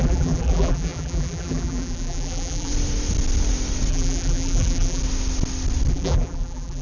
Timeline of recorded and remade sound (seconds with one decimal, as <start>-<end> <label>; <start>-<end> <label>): 0.0-2.7 remade; 2.7-3.9 recorded; 3.9-5.0 remade; 5.0-5.9 recorded; 5.9-6.8 remade